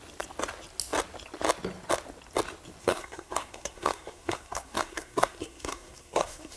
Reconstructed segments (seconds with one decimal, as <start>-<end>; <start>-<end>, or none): 2.8-6.6